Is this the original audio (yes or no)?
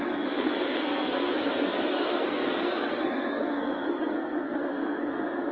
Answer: no